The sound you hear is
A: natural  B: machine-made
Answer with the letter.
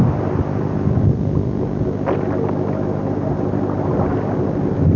A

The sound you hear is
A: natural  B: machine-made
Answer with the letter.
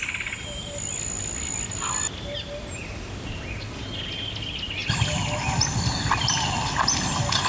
A